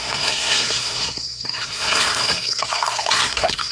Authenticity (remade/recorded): remade